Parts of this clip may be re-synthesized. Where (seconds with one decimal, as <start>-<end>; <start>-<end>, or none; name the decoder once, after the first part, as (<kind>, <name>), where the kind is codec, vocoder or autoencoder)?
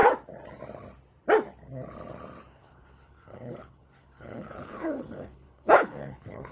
2.6-6.5 (codec, HILCodec)